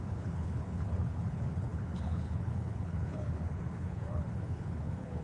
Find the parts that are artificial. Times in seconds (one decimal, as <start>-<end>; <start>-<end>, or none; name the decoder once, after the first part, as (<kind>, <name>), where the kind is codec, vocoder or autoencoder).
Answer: 0.0-5.2 (codec, HILCodec)